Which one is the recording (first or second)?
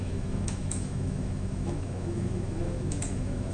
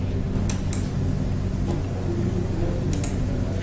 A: second